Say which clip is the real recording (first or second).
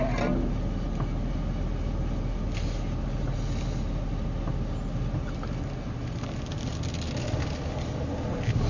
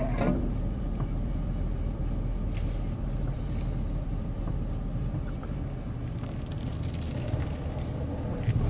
first